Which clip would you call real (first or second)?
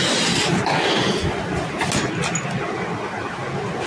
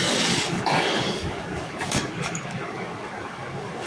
first